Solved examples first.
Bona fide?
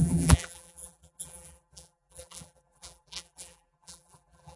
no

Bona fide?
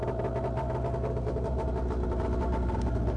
yes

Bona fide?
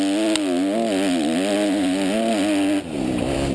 yes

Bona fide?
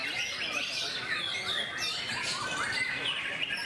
no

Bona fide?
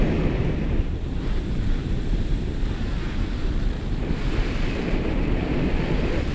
no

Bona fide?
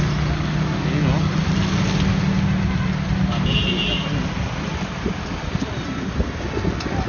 yes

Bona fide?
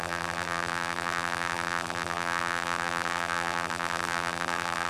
no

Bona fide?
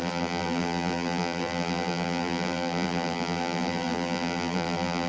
no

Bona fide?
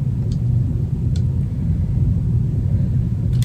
yes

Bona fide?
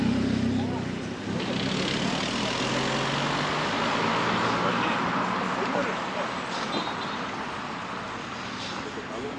yes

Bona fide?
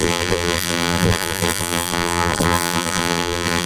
no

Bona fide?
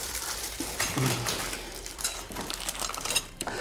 no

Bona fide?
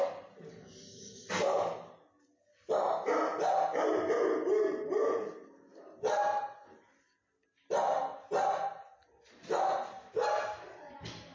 yes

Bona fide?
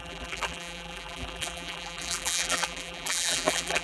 no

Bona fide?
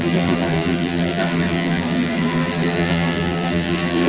no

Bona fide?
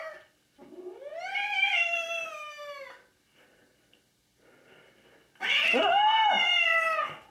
yes